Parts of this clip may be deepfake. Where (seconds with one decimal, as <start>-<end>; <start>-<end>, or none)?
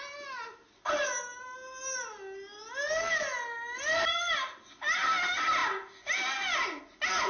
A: none